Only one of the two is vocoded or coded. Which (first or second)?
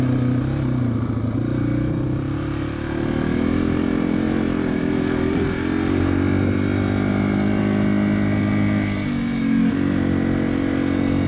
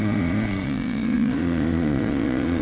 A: second